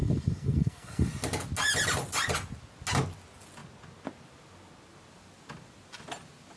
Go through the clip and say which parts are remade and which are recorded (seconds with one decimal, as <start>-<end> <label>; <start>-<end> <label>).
0.0-1.1 remade; 1.1-6.6 recorded